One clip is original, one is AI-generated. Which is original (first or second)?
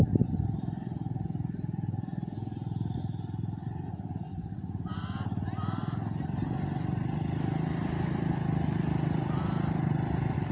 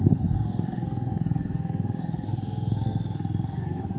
first